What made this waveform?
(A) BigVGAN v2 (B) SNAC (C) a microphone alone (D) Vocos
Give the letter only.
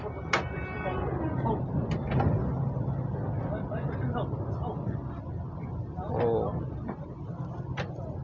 C